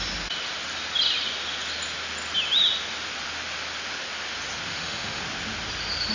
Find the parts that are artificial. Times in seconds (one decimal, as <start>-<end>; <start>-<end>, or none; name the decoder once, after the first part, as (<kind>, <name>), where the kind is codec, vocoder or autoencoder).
4.7-5.2 (autoencoder, DAC-VAE)